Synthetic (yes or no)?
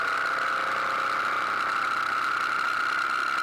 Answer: no